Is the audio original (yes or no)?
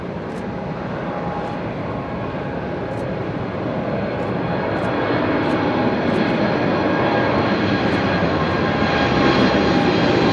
yes